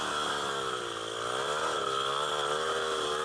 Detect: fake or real real